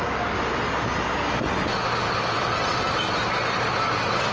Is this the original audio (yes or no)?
yes